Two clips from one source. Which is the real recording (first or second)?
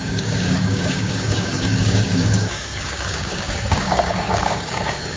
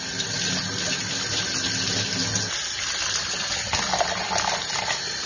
second